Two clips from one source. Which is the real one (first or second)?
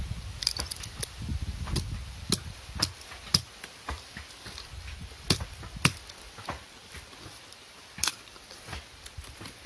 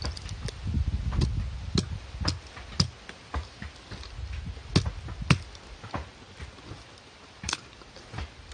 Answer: second